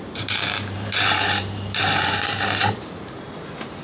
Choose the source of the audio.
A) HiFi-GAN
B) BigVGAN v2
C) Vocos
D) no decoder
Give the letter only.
B